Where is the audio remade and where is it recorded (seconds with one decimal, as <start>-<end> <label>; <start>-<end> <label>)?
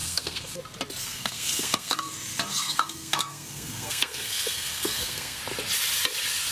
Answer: 0.0-0.6 remade; 0.6-1.0 recorded; 1.0-2.1 remade; 2.1-2.5 recorded; 2.5-5.4 remade; 5.4-6.5 recorded